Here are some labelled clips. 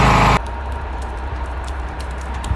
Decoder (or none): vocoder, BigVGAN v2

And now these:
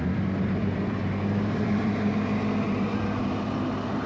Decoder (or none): vocoder, BigVGAN v2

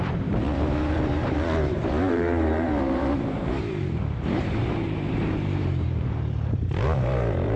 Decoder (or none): vocoder, BigVGAN v2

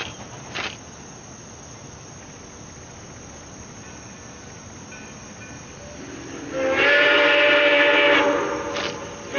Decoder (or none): none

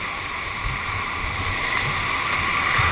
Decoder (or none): none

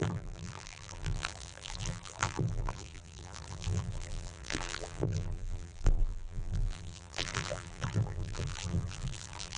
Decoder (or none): vocoder, BigVGAN v2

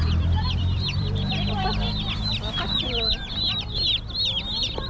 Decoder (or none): vocoder, BigVGAN v2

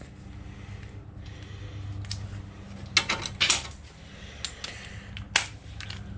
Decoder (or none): none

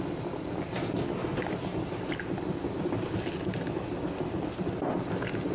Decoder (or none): none